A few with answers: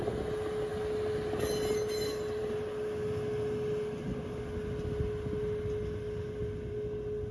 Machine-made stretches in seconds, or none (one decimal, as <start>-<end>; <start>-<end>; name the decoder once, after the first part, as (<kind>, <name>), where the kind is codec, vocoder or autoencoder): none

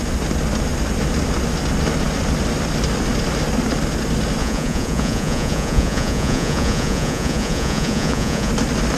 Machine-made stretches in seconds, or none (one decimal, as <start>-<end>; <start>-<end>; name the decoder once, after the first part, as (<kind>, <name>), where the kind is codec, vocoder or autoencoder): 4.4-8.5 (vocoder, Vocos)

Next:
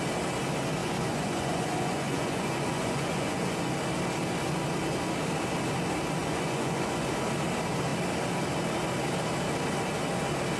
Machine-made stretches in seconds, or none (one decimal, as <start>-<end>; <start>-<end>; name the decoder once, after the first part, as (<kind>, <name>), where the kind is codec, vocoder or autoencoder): 0.8-3.7 (vocoder, Vocos); 6.2-7.1

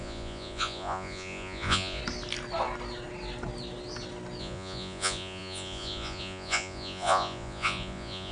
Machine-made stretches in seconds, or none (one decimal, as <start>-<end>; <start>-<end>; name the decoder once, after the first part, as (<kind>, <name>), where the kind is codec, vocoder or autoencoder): 0.0-2.0 (vocoder, Vocos); 4.4-8.3